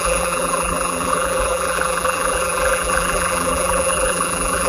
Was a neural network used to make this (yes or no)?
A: yes